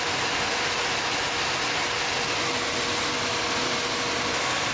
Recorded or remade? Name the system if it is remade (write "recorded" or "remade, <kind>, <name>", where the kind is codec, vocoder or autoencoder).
recorded